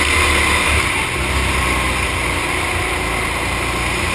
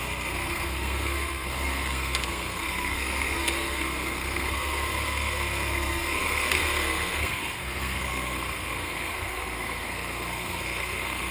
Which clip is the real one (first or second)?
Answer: first